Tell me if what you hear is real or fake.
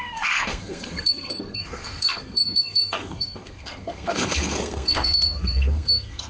fake